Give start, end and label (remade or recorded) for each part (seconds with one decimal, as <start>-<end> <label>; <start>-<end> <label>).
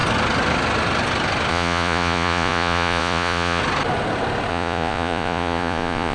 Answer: 0.0-1.5 recorded; 1.5-3.6 remade; 3.6-4.5 recorded; 4.5-6.1 remade